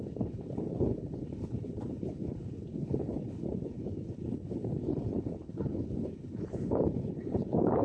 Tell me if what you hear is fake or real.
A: fake